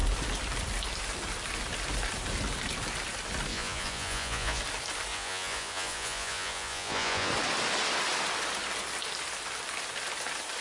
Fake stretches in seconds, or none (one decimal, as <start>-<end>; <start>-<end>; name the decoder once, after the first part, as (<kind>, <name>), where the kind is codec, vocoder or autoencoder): 3.5-4.6 (vocoder, Vocos); 5.1-7.3